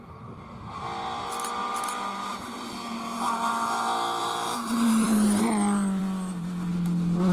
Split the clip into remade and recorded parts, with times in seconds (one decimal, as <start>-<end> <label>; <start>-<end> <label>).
0.0-2.3 recorded; 2.3-3.5 remade; 3.5-4.2 recorded; 4.2-5.4 remade; 5.4-7.3 recorded